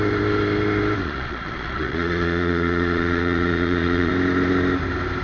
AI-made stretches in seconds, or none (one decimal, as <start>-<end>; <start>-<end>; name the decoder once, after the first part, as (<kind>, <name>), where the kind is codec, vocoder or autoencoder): 1.0-4.1 (vocoder, Vocos)